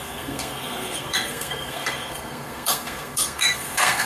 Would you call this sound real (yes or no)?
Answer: no